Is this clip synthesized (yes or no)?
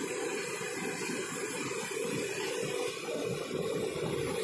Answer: yes